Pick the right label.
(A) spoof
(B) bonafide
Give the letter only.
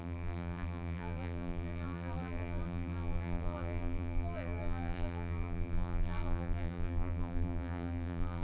A